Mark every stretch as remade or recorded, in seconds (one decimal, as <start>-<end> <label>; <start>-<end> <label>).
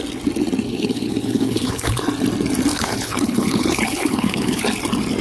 0.0-0.7 recorded; 0.7-2.0 remade; 2.0-2.7 recorded; 2.7-4.6 remade; 4.6-5.2 recorded